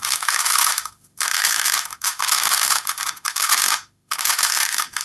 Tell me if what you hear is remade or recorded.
remade